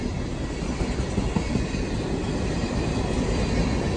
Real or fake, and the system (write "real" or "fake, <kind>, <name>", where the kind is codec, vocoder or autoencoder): real